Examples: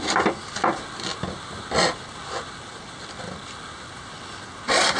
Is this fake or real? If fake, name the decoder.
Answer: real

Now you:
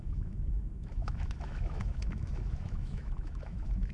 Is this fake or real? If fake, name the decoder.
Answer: fake, autoencoder, DAC-VAE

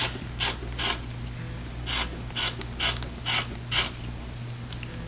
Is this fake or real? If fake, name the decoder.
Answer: real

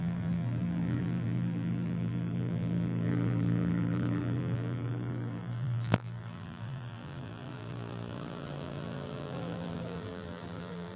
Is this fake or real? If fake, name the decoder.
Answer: fake, vocoder, BigVGAN v2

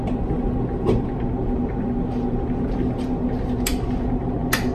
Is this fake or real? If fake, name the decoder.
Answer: real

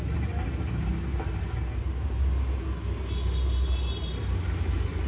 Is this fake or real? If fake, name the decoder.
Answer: real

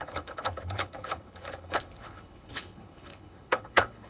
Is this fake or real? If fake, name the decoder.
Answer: fake, codec, HILCodec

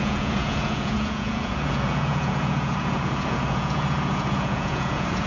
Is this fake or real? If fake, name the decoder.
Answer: fake, vocoder, Vocos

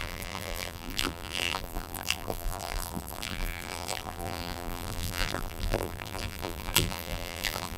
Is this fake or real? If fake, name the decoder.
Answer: fake, vocoder, BigVGAN v2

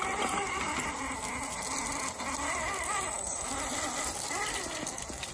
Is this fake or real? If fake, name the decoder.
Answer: real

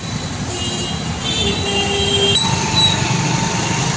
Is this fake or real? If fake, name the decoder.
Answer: real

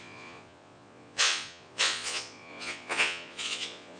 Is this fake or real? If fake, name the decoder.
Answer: fake, vocoder, Vocos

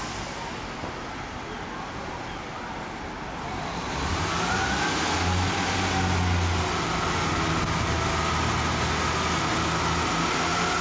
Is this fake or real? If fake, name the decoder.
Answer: real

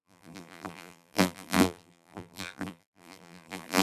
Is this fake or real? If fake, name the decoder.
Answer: fake, vocoder, BigVGAN v2